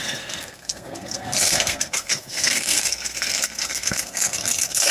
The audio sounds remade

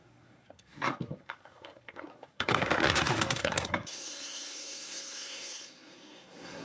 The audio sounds remade